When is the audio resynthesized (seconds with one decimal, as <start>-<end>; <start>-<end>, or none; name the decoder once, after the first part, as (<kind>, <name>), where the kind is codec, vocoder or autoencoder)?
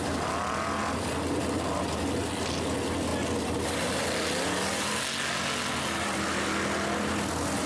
none